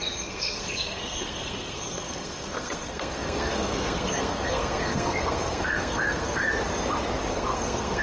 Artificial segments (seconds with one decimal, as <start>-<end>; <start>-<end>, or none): 0.0-6.4; 7.3-8.0